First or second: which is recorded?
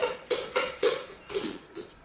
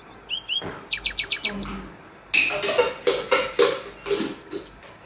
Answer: second